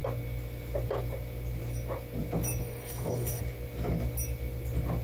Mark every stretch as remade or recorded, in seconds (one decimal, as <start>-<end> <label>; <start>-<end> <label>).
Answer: 0.0-2.6 recorded; 2.6-3.4 remade; 3.4-5.0 recorded